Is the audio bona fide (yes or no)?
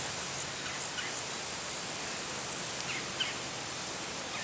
yes